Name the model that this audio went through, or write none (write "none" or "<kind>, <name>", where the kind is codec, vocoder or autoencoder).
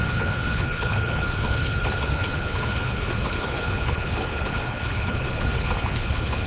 codec, HILCodec